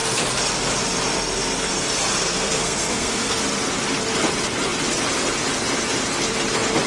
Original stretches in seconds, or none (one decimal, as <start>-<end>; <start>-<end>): 0.0-2.2; 3.4-6.9